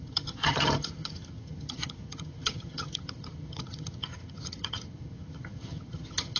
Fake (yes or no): yes